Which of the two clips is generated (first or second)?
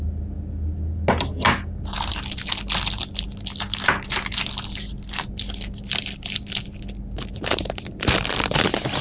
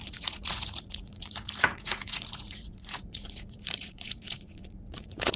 second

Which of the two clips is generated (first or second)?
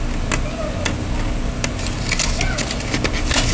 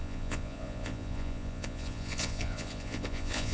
second